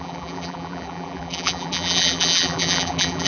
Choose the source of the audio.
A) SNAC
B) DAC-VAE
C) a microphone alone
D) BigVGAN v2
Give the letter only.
D